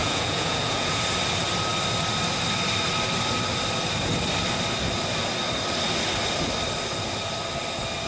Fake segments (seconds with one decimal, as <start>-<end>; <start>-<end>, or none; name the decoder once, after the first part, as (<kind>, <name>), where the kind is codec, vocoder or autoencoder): 0.0-1.0 (vocoder, Vocos)

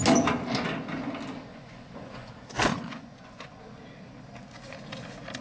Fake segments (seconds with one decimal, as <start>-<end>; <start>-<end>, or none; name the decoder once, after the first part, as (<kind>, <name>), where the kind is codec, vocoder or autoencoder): 1.5-2.3 (vocoder, Vocos); 2.7-3.6

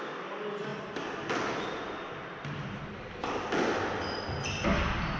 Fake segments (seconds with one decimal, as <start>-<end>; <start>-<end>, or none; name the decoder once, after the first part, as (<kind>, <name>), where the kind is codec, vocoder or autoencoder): none

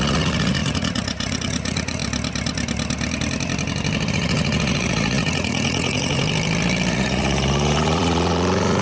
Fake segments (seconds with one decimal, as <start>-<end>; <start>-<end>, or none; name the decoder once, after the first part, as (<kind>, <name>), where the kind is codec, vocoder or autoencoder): 0.0-2.0 (vocoder, Vocos); 4.1-6.2; 6.9-8.8

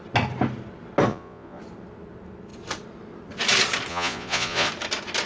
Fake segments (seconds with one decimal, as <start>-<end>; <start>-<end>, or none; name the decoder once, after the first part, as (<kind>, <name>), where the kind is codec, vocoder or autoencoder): 1.1-1.6 (vocoder, Vocos); 3.9-4.7

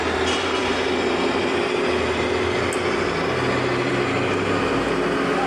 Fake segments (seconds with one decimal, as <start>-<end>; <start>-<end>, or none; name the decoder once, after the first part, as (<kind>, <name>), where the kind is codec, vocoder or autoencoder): none

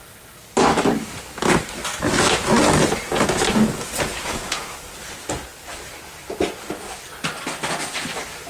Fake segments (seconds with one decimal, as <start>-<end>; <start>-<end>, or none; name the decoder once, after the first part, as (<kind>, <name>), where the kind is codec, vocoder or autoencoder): 4.1-4.7 (vocoder, Vocos)

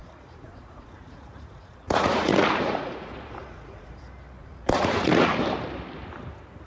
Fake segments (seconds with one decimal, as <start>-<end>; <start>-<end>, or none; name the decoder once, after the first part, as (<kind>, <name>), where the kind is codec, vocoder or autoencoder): 0.0-4.0 (vocoder, Vocos); 4.4-5.4